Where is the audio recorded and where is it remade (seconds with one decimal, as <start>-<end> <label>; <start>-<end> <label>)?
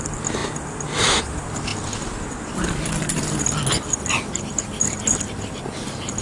0.0-6.2 recorded